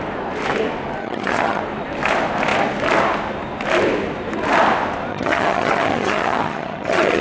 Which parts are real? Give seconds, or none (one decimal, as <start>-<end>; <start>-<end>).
0.0-1.0; 1.6-5.1